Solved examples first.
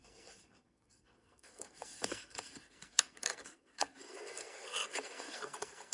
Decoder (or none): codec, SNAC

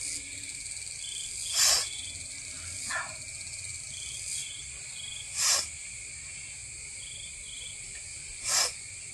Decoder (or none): none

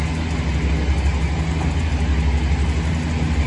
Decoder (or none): none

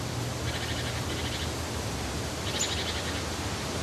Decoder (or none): none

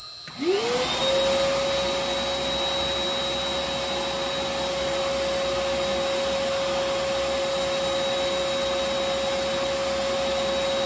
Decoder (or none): none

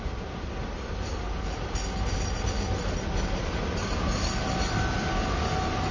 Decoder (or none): none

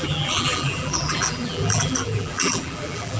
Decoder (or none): vocoder, BigVGAN v2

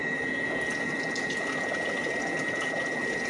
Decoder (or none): vocoder, BigVGAN v2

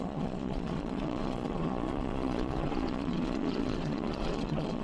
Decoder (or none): vocoder, Vocos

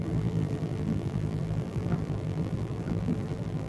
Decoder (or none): vocoder, BigVGAN v2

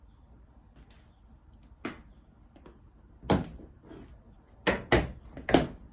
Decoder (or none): none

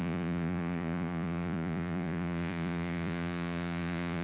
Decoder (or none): vocoder, Vocos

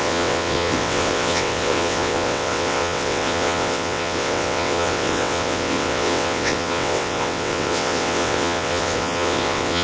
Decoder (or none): vocoder, WaveNeXt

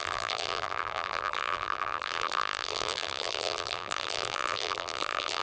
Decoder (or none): vocoder, BigVGAN v2